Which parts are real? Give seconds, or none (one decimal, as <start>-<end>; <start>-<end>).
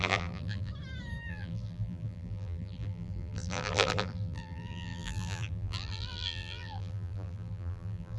0.7-1.3